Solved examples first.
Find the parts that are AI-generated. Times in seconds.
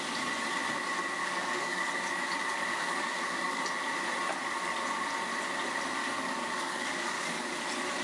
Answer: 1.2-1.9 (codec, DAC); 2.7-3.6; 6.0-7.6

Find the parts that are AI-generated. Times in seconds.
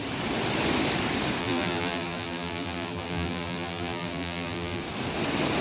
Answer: 1.4-4.8 (vocoder, BigVGAN v2)